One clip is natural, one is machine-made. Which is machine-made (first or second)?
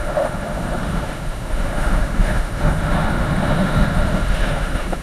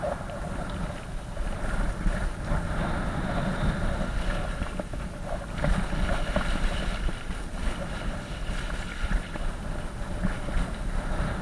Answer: first